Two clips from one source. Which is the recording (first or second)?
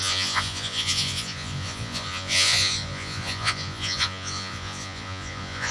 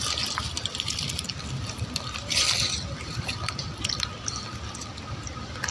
second